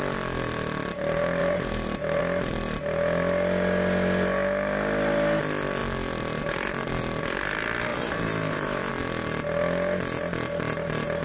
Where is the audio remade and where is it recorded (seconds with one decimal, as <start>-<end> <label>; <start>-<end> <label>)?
0.0-1.4 recorded; 1.4-2.2 remade; 2.2-7.9 recorded; 7.9-8.9 remade; 8.9-11.2 recorded

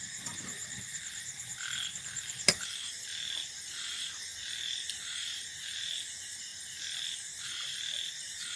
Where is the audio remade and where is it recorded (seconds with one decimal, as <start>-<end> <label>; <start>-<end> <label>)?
0.0-0.9 recorded; 0.9-2.9 remade; 2.9-6.5 recorded; 6.5-7.8 remade; 7.8-8.6 recorded

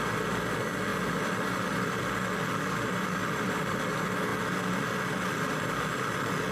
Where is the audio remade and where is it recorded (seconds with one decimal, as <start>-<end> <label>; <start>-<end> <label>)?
0.0-0.9 recorded; 0.9-2.0 remade; 2.0-3.2 recorded; 3.2-3.8 remade; 3.8-6.5 recorded

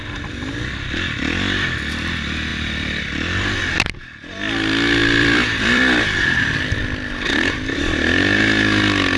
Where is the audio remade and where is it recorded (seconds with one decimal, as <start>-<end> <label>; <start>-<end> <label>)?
0.0-2.5 recorded; 2.5-3.1 remade; 3.1-5.0 recorded; 5.0-7.8 remade; 7.8-9.2 recorded

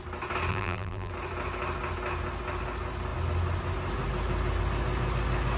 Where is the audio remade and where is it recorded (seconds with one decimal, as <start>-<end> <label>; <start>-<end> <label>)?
0.0-0.5 recorded; 0.5-1.1 remade; 1.1-5.6 recorded